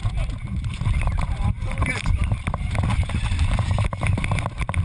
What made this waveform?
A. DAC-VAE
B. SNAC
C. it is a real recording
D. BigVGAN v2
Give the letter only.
D